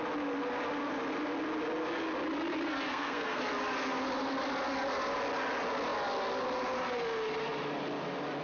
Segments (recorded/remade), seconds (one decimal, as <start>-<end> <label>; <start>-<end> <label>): 0.0-2.9 recorded; 2.9-3.4 remade; 3.4-8.4 recorded